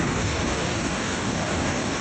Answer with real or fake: fake